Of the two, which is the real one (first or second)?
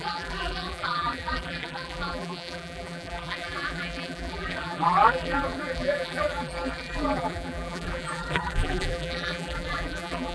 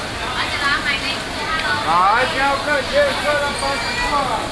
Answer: second